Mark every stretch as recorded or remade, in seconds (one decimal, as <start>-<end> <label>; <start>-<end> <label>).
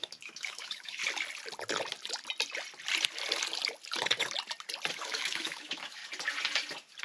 0.0-1.0 remade; 1.0-4.9 recorded; 4.9-6.0 remade; 6.0-7.0 recorded